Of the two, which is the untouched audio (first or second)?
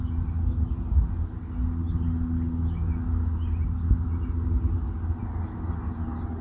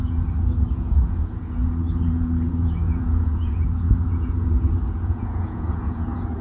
first